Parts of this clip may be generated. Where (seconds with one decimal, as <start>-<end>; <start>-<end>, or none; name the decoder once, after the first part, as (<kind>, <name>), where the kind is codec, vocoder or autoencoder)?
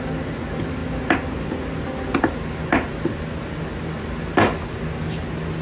none